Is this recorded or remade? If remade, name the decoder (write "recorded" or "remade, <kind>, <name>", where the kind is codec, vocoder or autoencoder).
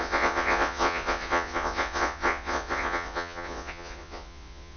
remade, vocoder, Vocos